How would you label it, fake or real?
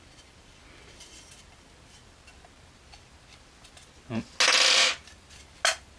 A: real